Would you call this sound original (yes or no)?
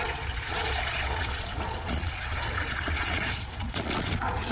no